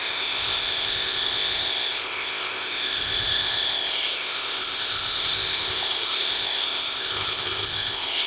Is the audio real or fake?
fake